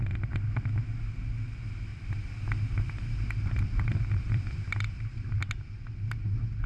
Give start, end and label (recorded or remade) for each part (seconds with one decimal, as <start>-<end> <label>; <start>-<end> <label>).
0.0-1.9 recorded; 1.9-5.8 remade; 5.8-6.7 recorded